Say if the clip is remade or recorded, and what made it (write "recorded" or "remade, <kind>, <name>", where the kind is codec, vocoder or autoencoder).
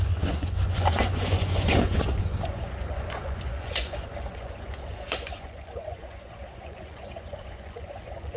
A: remade, vocoder, Vocos